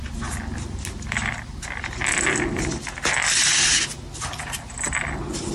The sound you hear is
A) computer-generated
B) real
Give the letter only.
B